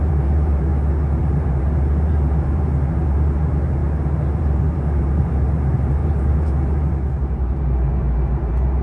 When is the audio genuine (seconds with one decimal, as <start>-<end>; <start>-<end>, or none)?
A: 0.7-1.2; 3.8-4.4

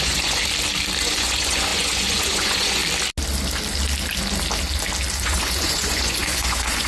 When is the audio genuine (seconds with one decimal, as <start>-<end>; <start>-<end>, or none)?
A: 0.4-1.0; 2.8-5.2

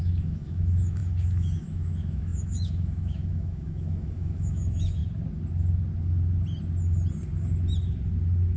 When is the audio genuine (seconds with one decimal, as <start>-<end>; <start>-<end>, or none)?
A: 5.0-8.6

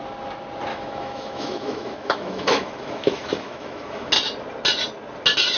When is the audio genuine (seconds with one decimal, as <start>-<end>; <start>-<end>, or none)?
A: 0.0-0.7; 4.1-5.6

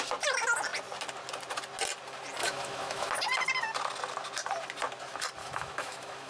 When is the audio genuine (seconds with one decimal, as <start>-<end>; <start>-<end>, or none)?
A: 0.0-2.4; 3.1-5.4

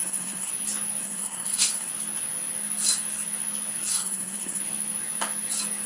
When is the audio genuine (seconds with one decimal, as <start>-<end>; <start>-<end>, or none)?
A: 0.5-1.0; 1.9-3.9; 4.6-5.9